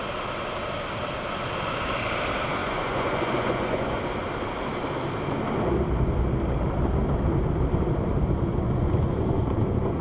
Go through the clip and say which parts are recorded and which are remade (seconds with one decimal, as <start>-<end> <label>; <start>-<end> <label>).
0.0-2.6 recorded; 2.6-4.0 remade; 4.0-8.5 recorded; 8.5-10.0 remade